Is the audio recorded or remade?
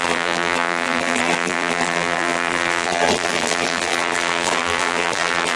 remade